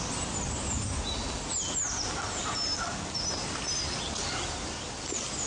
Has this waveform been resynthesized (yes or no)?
no